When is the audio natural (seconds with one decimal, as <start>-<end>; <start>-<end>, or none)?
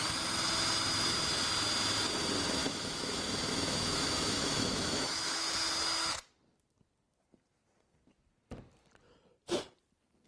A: 0.0-2.6; 5.4-10.3